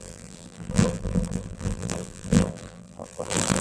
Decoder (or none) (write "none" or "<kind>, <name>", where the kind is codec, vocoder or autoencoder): vocoder, BigVGAN v2